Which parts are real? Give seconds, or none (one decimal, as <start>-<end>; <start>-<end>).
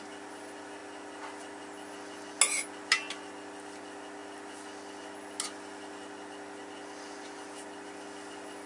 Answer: 0.0-8.7